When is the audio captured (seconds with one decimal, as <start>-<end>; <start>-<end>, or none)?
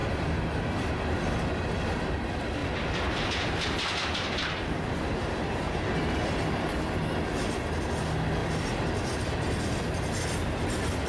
0.6-2.6; 5.8-8.4; 9.6-11.1